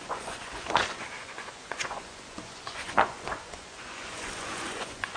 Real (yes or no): no